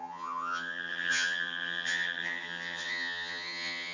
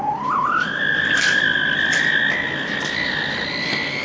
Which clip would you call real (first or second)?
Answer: second